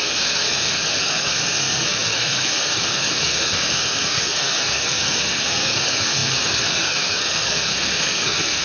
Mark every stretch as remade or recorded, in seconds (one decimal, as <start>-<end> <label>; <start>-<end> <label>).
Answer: 0.0-8.6 remade